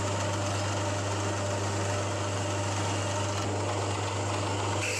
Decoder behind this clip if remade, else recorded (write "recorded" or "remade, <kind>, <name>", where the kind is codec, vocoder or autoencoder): recorded